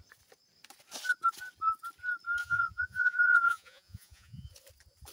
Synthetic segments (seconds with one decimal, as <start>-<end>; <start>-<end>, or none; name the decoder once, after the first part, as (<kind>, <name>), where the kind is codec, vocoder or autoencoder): 2.4-4.5 (vocoder, Vocos)